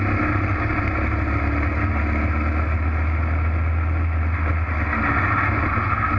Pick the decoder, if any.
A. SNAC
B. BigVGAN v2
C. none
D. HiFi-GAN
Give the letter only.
C